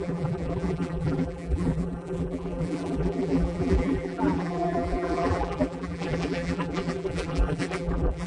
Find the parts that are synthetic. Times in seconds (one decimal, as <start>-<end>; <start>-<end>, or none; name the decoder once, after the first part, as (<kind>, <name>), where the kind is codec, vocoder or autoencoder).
0.0-8.3 (vocoder, BigVGAN v2)